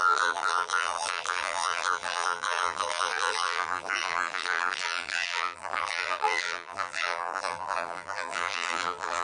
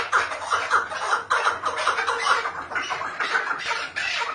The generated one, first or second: first